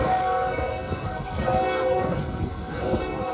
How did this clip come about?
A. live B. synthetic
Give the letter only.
B